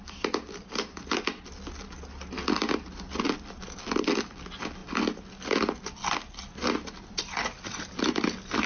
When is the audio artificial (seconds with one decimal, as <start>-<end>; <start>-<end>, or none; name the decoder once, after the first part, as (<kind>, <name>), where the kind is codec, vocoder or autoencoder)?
none